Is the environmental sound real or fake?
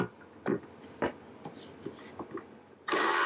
real